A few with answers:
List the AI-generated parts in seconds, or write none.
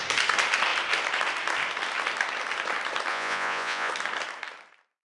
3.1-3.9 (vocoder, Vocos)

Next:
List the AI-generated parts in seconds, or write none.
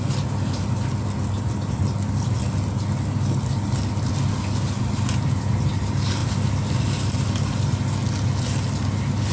none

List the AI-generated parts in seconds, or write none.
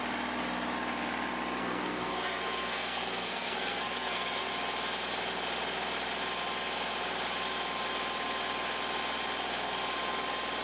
1.6-4.5 (codec, SNAC)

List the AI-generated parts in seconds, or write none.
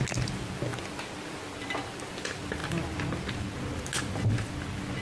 none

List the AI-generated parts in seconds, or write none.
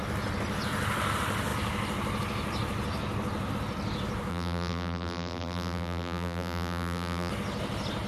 4.3-7.3 (vocoder, BigVGAN v2)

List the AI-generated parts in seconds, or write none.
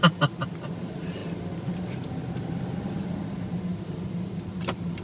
none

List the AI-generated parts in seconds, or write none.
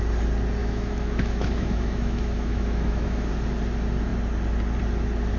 0.6-3.3 (autoencoder, DAC-VAE)